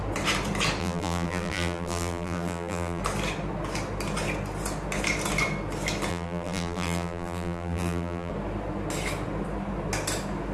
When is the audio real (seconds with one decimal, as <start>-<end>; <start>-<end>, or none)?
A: 0.0-0.8; 3.0-6.1; 8.3-10.5